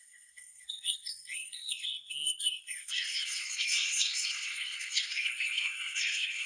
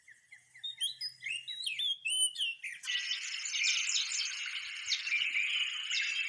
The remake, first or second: first